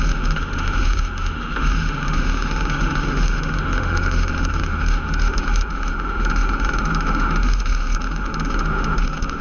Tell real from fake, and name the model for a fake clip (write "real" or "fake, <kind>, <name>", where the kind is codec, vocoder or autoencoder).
fake, autoencoder, DAC-VAE